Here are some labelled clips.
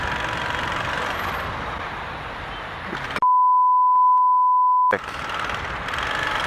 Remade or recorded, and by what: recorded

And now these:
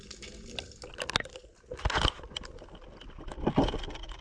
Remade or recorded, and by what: recorded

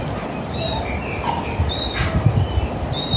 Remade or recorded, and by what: recorded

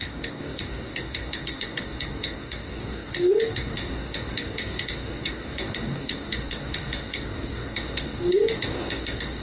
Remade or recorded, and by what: remade, codec, DAC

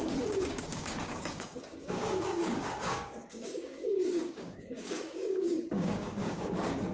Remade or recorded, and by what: remade, codec, DAC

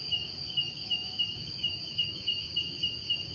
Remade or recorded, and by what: remade, codec, DAC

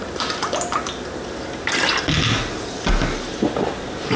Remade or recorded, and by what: recorded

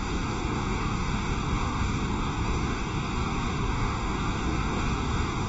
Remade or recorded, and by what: remade, codec, DAC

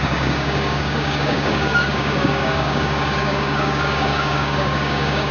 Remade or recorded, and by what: remade, codec, DAC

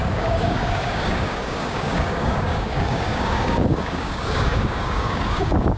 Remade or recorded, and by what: remade, codec, DAC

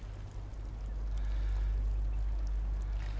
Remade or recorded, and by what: recorded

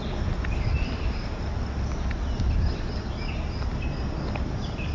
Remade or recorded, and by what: recorded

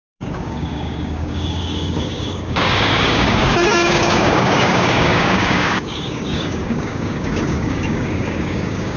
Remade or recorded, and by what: remade, codec, DAC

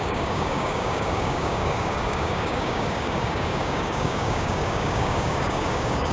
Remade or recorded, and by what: remade, codec, DAC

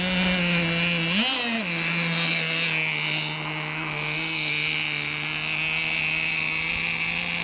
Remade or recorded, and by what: recorded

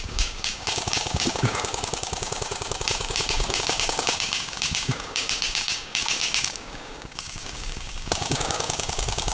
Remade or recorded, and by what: remade, codec, DAC